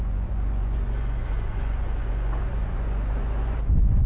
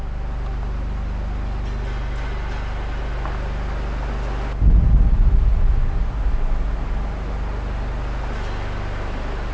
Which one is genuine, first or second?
second